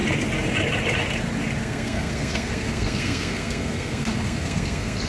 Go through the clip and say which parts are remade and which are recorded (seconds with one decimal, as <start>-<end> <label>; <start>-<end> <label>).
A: 0.0-1.6 recorded; 1.6-5.1 remade